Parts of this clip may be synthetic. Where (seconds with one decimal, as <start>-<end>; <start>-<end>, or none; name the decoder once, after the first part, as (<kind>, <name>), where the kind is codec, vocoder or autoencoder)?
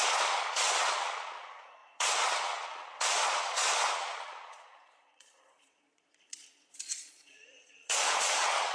0.0-8.7 (vocoder, Vocos)